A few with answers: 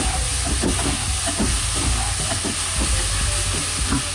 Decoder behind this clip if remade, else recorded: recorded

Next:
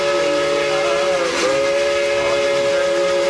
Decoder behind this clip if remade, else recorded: recorded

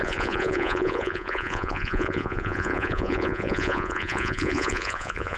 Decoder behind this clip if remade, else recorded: remade, vocoder, Vocos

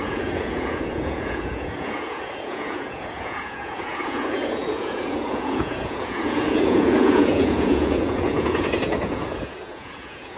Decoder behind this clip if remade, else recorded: remade, vocoder, Vocos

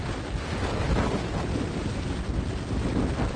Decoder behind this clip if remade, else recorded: recorded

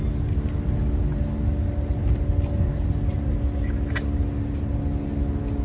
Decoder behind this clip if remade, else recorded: recorded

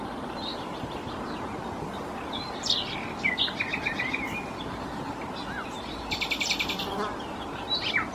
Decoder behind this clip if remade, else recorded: recorded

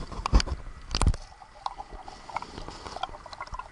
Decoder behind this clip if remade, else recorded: recorded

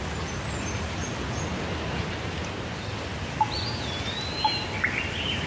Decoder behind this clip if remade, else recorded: recorded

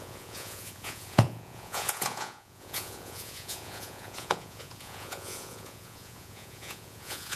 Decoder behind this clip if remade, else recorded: remade, vocoder, Vocos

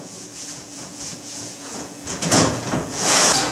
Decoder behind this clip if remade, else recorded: remade, vocoder, Vocos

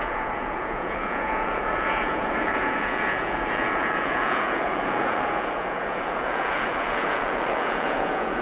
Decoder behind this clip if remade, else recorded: remade, vocoder, Vocos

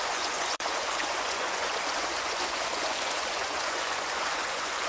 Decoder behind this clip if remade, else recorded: remade, vocoder, Vocos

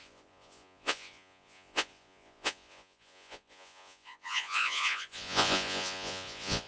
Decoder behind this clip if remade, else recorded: remade, vocoder, Vocos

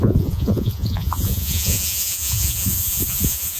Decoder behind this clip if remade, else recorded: remade, vocoder, Vocos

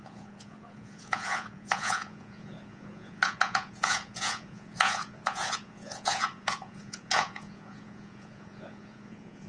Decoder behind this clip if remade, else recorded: remade, vocoder, Vocos